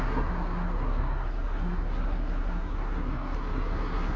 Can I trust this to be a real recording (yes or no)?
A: no